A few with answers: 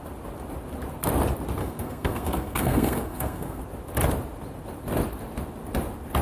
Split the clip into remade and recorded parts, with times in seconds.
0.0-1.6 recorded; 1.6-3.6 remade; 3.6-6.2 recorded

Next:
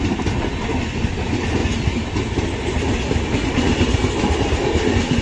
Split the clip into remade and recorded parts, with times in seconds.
0.0-5.2 recorded

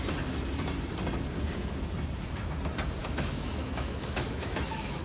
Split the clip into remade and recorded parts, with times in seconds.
0.0-3.0 recorded; 3.0-5.0 remade

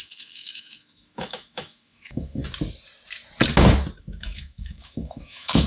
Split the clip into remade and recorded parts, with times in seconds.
0.0-2.4 remade; 2.4-4.0 recorded; 4.0-5.7 remade

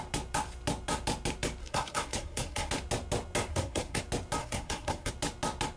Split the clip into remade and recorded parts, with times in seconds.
0.0-1.6 recorded; 1.6-2.7 remade; 2.7-3.5 recorded; 3.5-4.0 remade; 4.0-4.4 recorded; 4.4-5.1 remade; 5.1-5.8 recorded

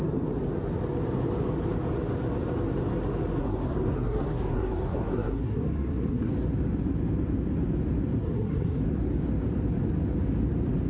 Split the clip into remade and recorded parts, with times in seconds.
0.0-3.4 recorded; 3.4-6.3 remade; 6.3-8.2 recorded; 8.2-8.8 remade; 8.8-10.9 recorded